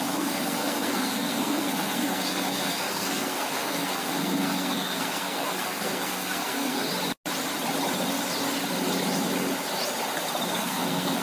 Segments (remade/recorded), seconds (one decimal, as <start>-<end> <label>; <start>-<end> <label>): 0.0-6.8 remade; 6.8-10.5 recorded; 10.5-11.2 remade